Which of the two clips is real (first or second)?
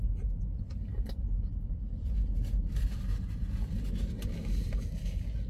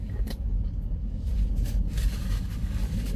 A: first